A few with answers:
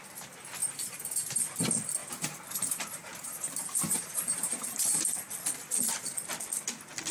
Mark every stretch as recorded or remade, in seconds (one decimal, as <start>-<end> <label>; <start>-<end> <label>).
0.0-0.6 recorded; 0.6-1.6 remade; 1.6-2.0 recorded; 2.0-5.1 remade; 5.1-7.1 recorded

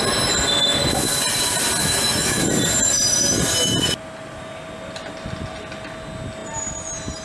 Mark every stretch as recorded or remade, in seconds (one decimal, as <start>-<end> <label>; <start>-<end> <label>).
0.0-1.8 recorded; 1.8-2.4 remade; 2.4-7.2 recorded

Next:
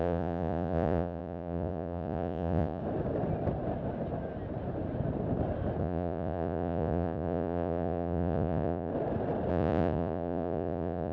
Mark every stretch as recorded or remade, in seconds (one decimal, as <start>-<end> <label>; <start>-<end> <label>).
0.0-2.8 remade; 2.8-5.8 recorded; 5.8-8.9 remade; 8.9-9.5 recorded; 9.5-11.1 remade

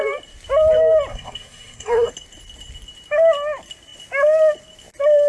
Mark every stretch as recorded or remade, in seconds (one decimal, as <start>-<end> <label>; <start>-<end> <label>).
0.0-1.1 recorded; 1.1-2.1 remade; 2.1-5.3 recorded

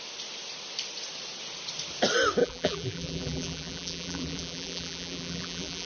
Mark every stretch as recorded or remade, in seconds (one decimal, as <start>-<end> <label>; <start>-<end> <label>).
0.0-2.4 recorded; 2.4-5.9 remade